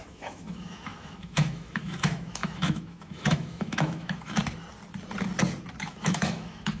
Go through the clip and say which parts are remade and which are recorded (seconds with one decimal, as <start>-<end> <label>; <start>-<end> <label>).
0.0-4.4 remade; 4.4-5.8 recorded; 5.8-6.8 remade